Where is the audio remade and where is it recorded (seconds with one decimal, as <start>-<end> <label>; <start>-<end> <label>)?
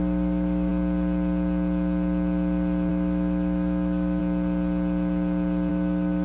0.0-0.7 remade; 0.7-2.9 recorded; 2.9-4.2 remade; 4.2-5.7 recorded; 5.7-6.2 remade